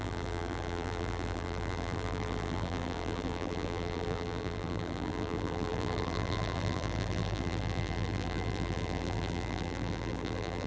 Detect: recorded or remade remade